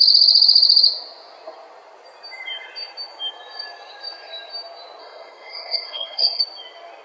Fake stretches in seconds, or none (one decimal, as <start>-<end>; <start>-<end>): 5.0-6.4